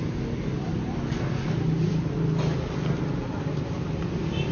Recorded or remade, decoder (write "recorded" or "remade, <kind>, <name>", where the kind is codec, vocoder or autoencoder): recorded